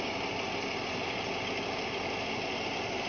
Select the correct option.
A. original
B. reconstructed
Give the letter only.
A